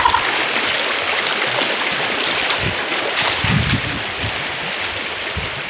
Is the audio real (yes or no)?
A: yes